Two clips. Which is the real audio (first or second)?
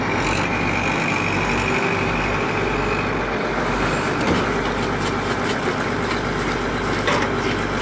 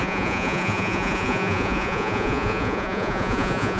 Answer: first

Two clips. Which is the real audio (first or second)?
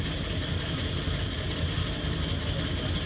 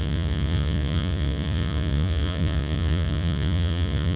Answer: first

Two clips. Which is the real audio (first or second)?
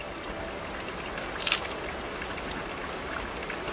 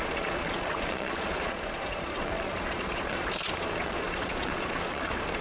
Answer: first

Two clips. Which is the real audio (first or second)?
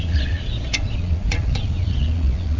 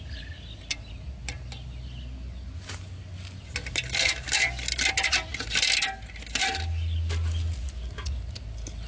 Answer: second